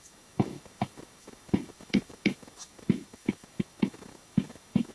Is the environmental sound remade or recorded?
remade